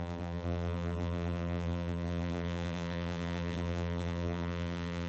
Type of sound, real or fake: fake